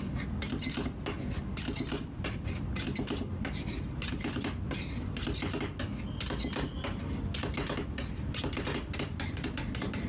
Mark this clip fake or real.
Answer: real